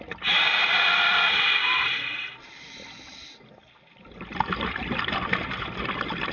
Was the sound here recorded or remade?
recorded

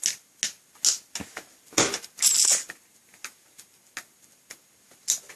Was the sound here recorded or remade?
recorded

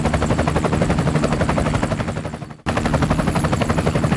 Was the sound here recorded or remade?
recorded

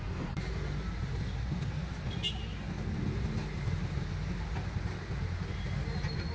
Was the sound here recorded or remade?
recorded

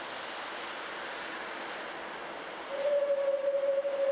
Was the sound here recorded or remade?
recorded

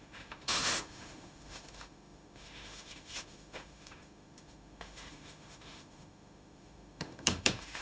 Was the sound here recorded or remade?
remade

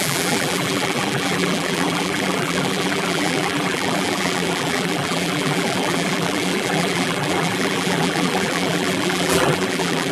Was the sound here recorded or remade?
remade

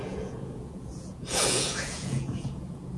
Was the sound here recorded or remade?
remade